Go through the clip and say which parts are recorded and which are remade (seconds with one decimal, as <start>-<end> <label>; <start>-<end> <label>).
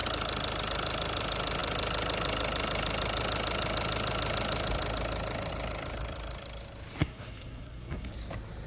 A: 0.0-7.0 recorded; 7.0-8.1 remade; 8.1-8.7 recorded